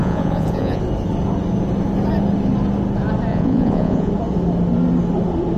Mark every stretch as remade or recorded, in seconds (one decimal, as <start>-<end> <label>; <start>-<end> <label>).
0.0-0.8 remade; 0.8-3.3 recorded; 3.3-4.1 remade; 4.1-5.6 recorded

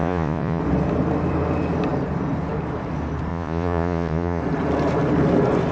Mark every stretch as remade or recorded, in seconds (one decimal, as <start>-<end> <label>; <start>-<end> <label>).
0.0-0.6 remade; 0.6-3.3 recorded; 3.3-4.4 remade; 4.4-5.7 recorded

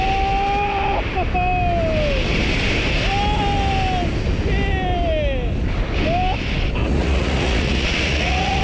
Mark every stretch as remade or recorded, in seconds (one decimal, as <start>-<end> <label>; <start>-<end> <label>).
0.0-6.8 recorded; 6.8-8.6 remade

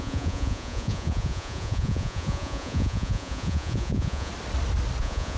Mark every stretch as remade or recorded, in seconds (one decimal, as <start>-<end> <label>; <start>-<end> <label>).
0.0-4.3 remade; 4.3-5.0 recorded; 5.0-5.4 remade